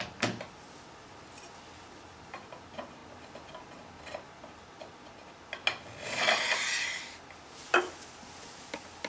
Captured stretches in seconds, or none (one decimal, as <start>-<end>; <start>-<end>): 0.0-9.1